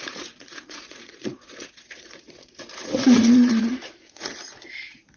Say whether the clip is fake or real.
fake